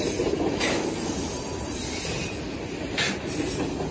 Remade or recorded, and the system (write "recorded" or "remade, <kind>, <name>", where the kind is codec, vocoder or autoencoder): recorded